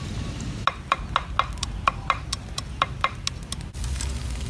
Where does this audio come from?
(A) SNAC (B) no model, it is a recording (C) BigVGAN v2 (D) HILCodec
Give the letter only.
B